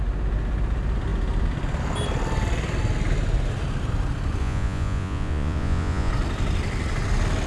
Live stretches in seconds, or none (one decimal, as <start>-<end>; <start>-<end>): 0.0-4.4; 6.1-7.5